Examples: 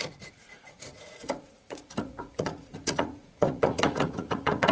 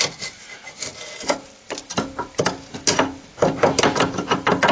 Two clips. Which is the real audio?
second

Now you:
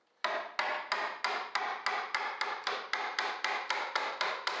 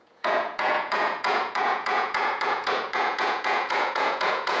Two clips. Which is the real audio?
first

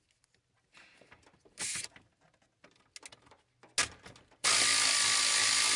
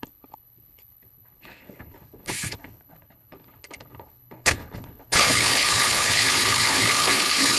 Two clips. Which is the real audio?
first